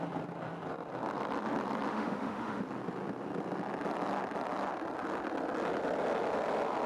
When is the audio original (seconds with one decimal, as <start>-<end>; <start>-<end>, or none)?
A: 0.0-1.9; 2.6-6.9